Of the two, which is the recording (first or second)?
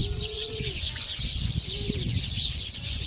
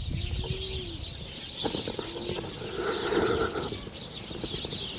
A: second